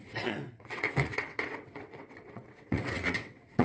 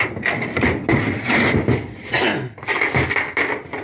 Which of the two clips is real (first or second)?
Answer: second